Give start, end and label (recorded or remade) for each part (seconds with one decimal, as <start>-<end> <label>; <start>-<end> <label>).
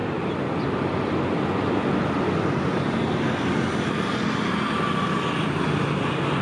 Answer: 0.0-6.4 recorded